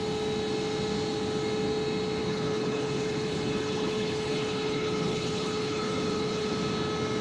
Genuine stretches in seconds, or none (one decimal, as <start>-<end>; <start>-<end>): 0.0-2.2; 6.5-7.2